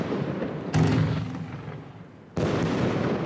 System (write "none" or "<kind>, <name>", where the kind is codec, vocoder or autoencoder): none